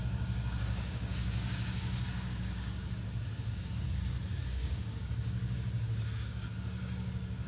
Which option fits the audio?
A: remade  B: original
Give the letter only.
A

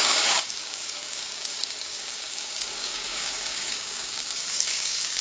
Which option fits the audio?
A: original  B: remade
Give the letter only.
B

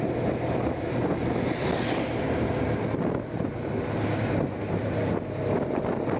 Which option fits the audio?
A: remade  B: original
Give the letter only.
B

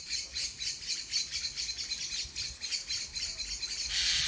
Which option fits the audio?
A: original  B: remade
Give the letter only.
A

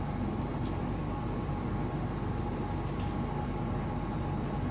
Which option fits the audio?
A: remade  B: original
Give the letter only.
B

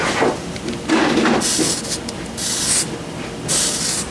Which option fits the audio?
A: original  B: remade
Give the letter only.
A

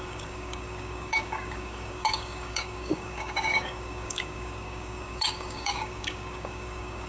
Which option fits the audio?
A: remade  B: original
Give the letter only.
A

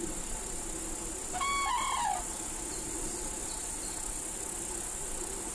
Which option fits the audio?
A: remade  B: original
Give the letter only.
B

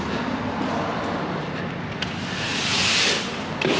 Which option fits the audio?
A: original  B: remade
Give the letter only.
A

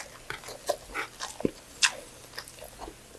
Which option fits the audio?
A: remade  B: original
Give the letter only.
B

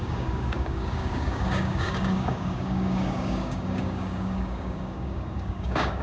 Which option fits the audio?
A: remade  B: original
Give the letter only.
A